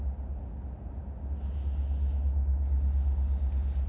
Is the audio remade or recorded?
recorded